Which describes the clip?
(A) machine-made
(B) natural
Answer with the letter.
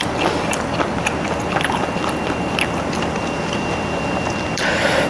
B